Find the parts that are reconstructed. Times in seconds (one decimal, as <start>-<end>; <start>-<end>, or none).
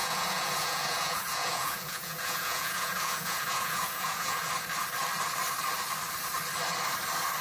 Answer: 0.0-4.4